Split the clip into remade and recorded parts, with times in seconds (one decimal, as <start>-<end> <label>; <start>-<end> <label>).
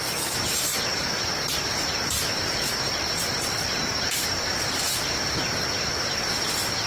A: 0.0-0.7 recorded; 0.7-4.8 remade; 4.8-6.9 recorded